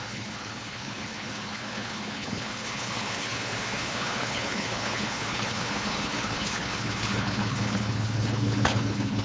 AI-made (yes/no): yes